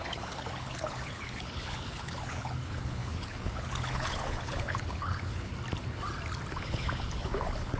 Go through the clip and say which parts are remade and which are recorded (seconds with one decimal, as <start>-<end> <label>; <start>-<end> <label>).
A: 0.0-5.5 remade; 5.5-6.5 recorded; 6.5-7.8 remade